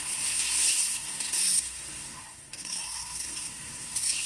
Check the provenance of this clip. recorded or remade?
remade